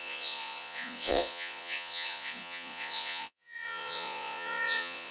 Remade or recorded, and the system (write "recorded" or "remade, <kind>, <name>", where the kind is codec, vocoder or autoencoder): remade, vocoder, Vocos